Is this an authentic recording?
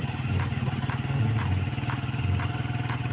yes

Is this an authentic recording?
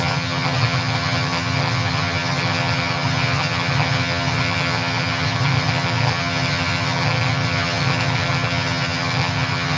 no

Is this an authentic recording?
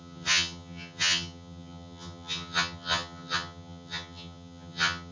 no